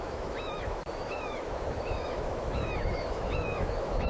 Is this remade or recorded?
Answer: remade